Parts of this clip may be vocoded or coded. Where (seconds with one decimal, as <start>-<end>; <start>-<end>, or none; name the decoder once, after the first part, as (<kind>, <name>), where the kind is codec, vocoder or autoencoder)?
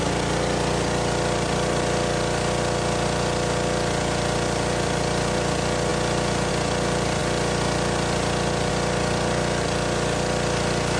none